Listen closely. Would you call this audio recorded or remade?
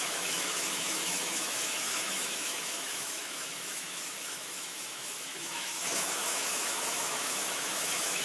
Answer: remade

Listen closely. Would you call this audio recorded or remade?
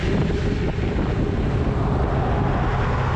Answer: recorded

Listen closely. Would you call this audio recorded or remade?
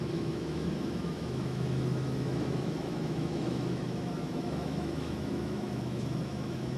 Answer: remade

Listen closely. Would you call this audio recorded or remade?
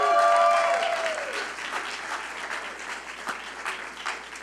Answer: recorded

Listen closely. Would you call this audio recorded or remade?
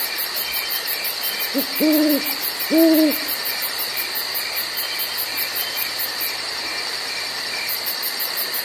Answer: recorded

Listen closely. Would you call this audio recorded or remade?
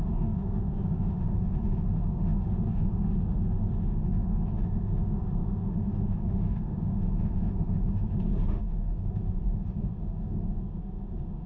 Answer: remade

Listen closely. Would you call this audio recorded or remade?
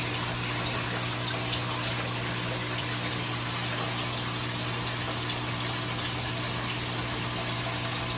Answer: recorded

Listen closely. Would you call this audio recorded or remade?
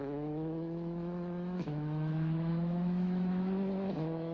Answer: remade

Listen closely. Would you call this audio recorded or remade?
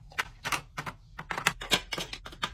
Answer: recorded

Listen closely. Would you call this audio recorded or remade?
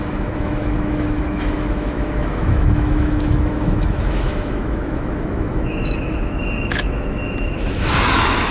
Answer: remade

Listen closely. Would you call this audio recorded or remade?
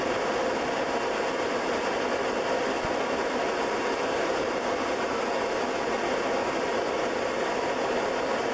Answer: recorded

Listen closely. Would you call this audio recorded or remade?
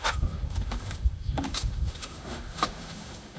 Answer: remade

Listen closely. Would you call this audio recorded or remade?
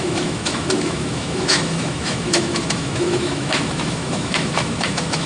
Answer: remade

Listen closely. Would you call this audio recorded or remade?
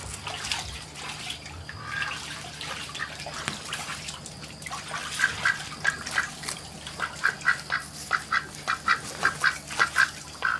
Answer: recorded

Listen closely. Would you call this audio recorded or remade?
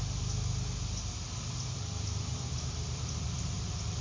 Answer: recorded